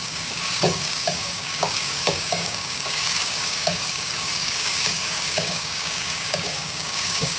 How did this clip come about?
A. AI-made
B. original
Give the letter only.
A